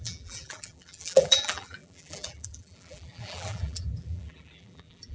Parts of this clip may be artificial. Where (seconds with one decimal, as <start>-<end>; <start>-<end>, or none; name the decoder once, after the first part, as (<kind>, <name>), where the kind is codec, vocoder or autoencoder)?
0.0-5.1 (vocoder, BigVGAN v2)